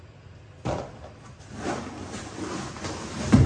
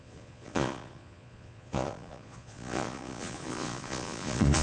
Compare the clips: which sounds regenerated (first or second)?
second